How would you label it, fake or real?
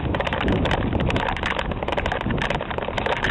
real